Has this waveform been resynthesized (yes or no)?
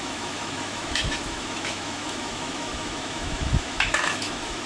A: yes